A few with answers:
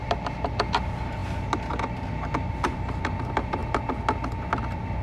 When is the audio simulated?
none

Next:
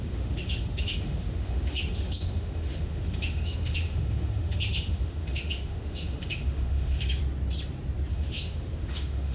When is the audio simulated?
0.0-7.2 (autoencoder, DAC-VAE); 8.1-9.3